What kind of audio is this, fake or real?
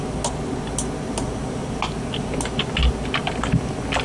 real